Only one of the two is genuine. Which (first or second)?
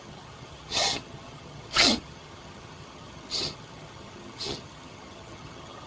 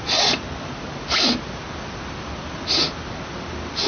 second